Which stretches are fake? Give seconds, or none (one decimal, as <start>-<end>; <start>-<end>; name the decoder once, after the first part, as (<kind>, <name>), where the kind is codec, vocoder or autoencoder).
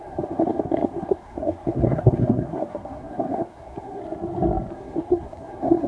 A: 0.0-4.0 (codec, SNAC); 4.7-5.9